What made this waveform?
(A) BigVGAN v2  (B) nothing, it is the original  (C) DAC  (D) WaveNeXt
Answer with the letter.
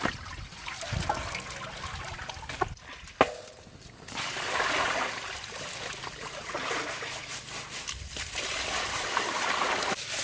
B